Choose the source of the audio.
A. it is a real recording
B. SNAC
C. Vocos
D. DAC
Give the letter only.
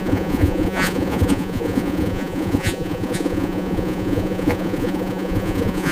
C